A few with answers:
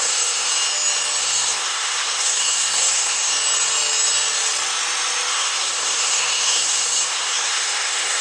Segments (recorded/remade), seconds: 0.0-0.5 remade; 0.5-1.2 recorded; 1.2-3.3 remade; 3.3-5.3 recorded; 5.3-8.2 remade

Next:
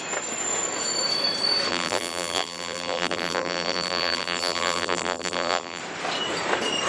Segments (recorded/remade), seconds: 0.0-1.7 recorded; 1.7-5.8 remade; 5.8-6.9 recorded

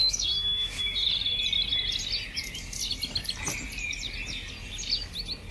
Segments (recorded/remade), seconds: 0.0-1.1 remade; 1.1-5.5 recorded

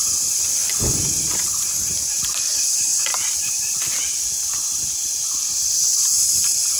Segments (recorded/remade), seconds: 0.0-0.6 remade; 0.6-1.2 recorded; 1.2-2.9 remade; 2.9-5.5 recorded; 5.5-6.8 remade

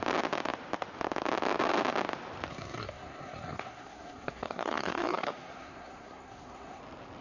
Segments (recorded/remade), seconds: 0.0-2.5 recorded; 2.5-6.8 remade; 6.8-7.2 recorded

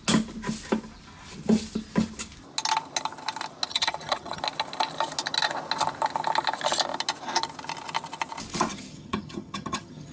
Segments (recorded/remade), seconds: 0.0-3.7 recorded; 3.7-4.4 remade; 4.4-8.7 recorded; 8.7-10.1 remade